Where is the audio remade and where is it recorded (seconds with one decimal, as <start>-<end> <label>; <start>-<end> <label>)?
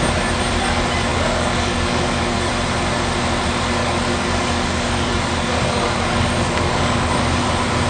0.0-1.1 recorded; 1.1-2.5 remade; 2.5-3.8 recorded; 3.8-7.5 remade; 7.5-7.9 recorded